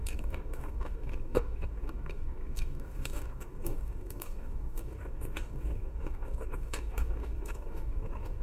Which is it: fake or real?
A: fake